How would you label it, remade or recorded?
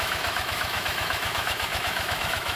remade